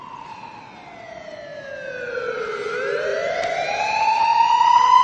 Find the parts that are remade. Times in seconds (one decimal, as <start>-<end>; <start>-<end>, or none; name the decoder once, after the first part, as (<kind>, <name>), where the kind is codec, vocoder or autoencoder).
3.1-3.8 (vocoder, BigVGAN v2)